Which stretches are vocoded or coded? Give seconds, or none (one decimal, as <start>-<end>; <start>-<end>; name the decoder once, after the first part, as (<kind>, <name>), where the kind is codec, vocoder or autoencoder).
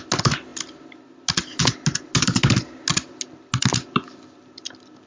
none